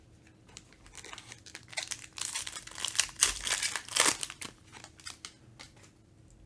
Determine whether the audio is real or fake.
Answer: real